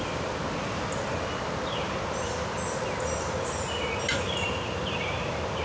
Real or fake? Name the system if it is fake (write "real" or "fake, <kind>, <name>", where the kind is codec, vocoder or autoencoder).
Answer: real